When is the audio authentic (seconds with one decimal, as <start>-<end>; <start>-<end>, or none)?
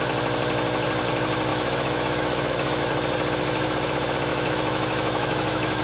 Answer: 0.0-1.5; 2.8-4.3